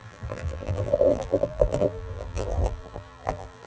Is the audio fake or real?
fake